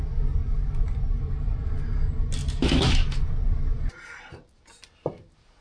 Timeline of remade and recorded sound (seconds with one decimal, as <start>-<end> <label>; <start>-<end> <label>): 0.0-2.4 recorded; 2.4-4.5 remade; 4.5-5.6 recorded